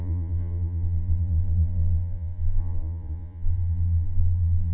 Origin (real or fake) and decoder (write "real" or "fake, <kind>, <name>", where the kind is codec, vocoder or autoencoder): fake, vocoder, Vocos